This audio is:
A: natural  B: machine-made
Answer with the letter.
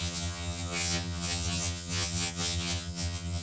B